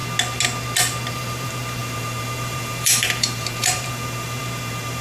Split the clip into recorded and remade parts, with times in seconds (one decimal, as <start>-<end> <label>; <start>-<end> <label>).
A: 0.0-1.1 recorded; 1.1-5.0 remade